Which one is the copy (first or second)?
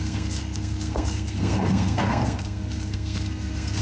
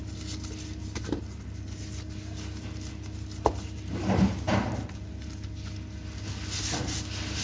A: first